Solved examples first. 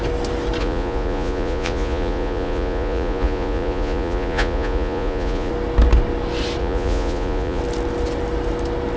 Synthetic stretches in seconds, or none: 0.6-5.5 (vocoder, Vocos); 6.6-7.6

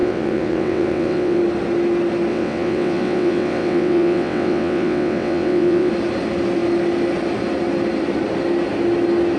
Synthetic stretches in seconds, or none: 0.0-1.4 (vocoder, WaveNeXt); 2.3-5.9

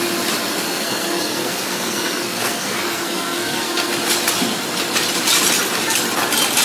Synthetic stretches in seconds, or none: 0.5-3.9 (codec, SNAC)

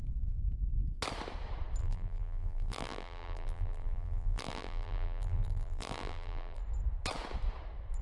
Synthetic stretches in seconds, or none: 1.8-6.6 (vocoder, BigVGAN v2)

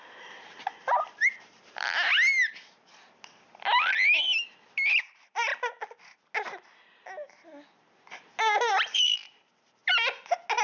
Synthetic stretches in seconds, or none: 0.0-2.1 (vocoder, BigVGAN v2); 5.0-5.5; 8.6-9.8